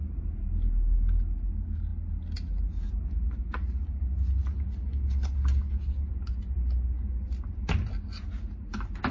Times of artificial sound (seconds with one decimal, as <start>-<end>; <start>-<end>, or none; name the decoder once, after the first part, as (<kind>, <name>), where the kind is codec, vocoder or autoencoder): none